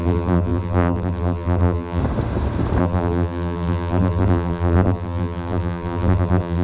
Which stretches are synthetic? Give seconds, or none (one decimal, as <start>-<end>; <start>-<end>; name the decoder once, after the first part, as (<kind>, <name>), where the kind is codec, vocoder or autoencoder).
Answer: 0.0-2.0 (vocoder, BigVGAN v2); 2.8-6.6